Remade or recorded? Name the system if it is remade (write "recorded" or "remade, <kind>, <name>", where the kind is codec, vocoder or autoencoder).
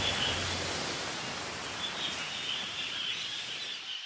recorded